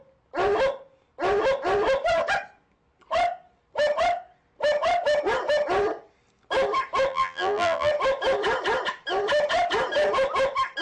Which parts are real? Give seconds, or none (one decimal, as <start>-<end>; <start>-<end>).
0.0-7.1; 7.9-10.8